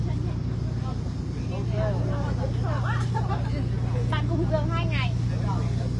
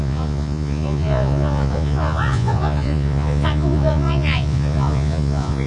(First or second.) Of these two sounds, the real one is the first